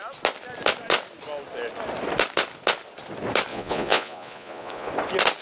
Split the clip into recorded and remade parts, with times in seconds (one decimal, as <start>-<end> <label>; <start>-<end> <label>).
0.0-3.5 recorded; 3.5-4.9 remade; 4.9-5.4 recorded